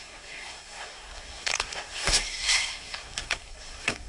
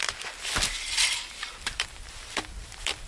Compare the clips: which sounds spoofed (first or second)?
first